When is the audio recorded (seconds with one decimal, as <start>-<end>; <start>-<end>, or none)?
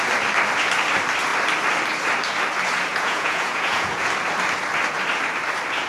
0.0-2.9; 4.1-5.9